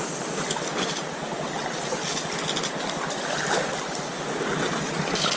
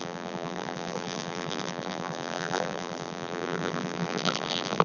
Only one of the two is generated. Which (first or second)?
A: second